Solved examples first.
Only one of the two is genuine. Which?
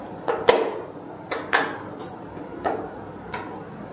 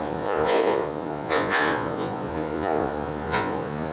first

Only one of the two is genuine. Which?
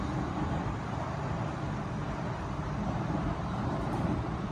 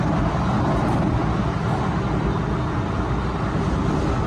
second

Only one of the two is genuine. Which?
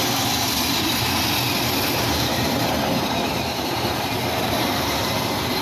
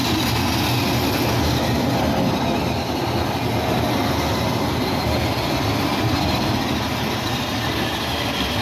second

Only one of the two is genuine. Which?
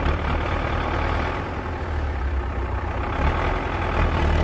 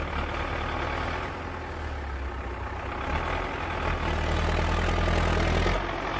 second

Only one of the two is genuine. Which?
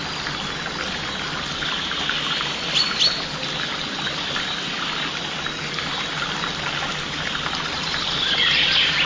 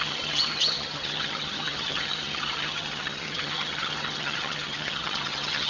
first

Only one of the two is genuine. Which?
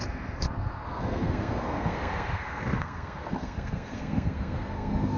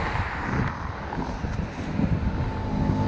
second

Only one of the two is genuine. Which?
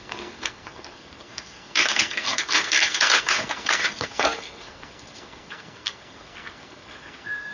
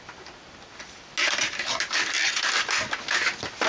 second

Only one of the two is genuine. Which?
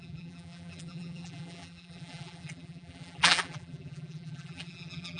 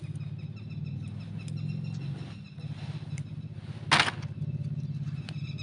second